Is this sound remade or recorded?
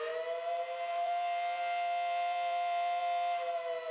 remade